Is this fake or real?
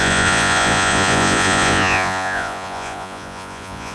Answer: fake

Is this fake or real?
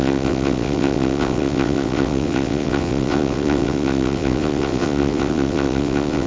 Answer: fake